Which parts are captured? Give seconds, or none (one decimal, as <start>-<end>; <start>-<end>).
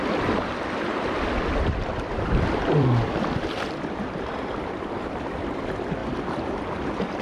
6.0-6.7